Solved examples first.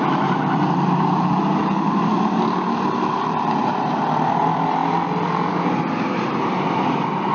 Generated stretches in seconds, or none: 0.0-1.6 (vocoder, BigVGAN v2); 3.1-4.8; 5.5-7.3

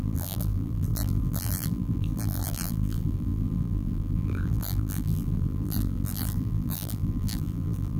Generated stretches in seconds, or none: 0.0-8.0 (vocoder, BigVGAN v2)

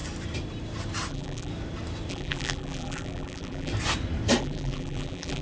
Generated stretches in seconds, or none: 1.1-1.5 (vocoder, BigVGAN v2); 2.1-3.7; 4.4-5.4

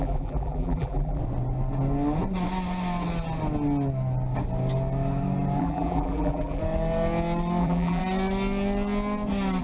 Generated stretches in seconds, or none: 0.0-1.2 (vocoder, BigVGAN v2); 5.6-6.6; 7.6-8.0

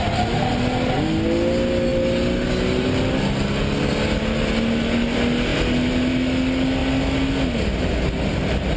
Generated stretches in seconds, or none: none

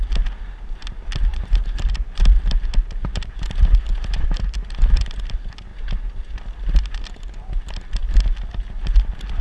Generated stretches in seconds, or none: 1.3-2.4 (vocoder, BigVGAN v2)

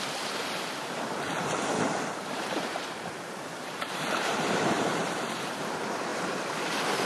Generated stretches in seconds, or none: 2.2-5.5 (vocoder, BigVGAN v2); 6.1-7.1

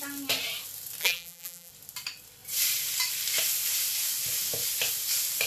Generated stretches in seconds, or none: 1.0-1.7 (vocoder, BigVGAN v2)